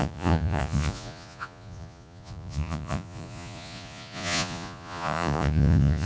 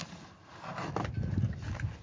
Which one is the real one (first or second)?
second